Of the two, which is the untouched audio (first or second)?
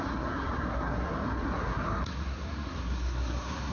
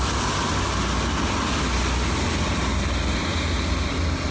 second